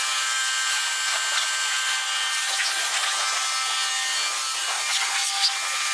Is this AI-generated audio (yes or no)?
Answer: no